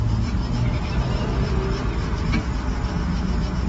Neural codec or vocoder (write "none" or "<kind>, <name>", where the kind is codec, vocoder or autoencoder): none